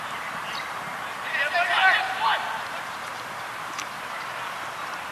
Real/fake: real